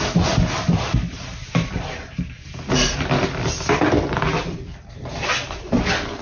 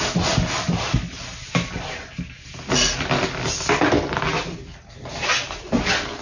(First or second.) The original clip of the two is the second